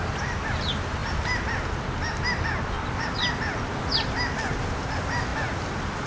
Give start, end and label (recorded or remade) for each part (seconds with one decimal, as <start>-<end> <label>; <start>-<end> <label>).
0.0-6.1 recorded